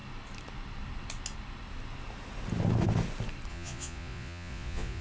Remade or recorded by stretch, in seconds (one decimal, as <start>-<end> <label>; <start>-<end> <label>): 0.0-3.5 recorded; 3.5-5.0 remade